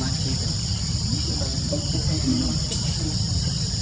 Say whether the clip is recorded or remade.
recorded